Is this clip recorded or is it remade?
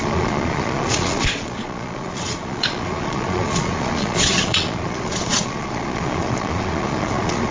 remade